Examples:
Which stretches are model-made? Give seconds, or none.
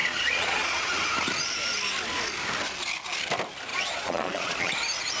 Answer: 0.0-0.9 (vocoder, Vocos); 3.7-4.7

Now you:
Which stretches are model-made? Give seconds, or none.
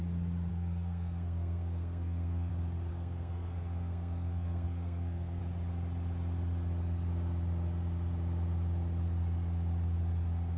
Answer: 0.5-2.5 (codec, SNAC); 2.9-5.4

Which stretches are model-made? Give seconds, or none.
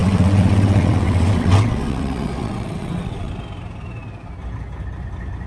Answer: 0.0-3.3 (vocoder, WaveNeXt)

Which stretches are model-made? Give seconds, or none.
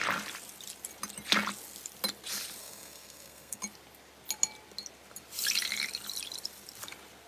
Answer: 2.6-3.6 (codec, SNAC)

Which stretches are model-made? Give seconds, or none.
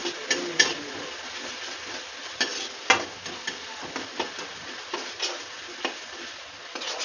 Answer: none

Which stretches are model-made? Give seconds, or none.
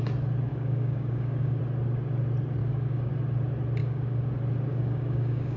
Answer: 0.5-1.6 (codec, DAC); 2.6-3.1; 3.8-4.3; 4.7-5.6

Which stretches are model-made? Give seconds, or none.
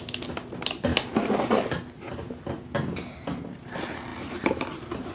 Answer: none